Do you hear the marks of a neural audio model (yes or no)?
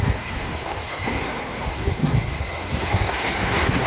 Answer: yes